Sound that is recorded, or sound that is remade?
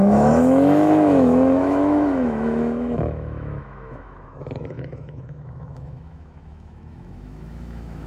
remade